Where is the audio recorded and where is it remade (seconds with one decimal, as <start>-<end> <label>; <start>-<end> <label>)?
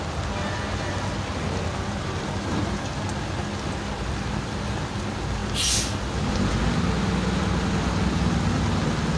0.0-9.2 recorded